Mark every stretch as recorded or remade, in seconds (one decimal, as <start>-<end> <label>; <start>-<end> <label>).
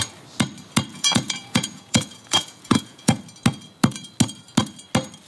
0.0-0.9 recorded; 0.9-3.2 remade; 3.2-5.3 recorded